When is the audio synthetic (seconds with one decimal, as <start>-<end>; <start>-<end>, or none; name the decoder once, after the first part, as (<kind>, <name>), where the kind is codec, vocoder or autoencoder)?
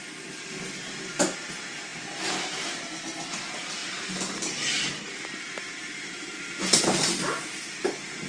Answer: none